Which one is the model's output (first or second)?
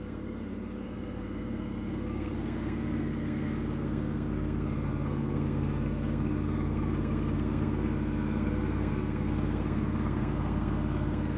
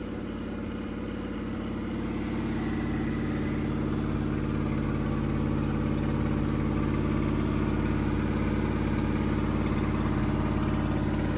first